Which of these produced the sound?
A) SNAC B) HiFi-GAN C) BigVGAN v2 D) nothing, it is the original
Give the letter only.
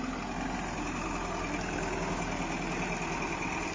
D